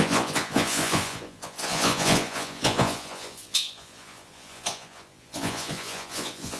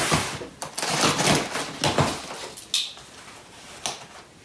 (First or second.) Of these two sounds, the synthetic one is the first